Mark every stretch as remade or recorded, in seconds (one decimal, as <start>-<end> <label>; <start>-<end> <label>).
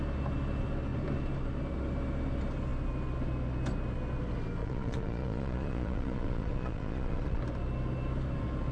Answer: 0.0-4.6 recorded; 4.6-7.4 remade; 7.4-8.7 recorded